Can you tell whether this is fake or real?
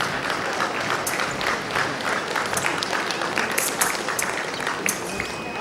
fake